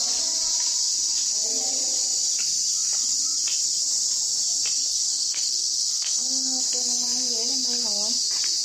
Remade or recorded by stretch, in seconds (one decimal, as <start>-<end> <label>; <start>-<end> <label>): 0.0-4.9 recorded; 4.9-6.6 remade; 6.6-8.6 recorded